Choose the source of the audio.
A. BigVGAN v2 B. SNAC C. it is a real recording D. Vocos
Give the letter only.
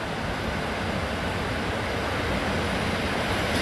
C